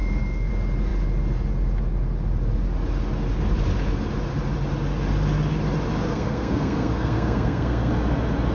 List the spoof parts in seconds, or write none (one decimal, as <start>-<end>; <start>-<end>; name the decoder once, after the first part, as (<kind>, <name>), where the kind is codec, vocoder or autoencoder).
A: 0.0-0.5 (codec, SNAC); 6.0-7.9